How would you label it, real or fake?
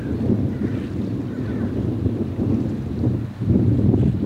real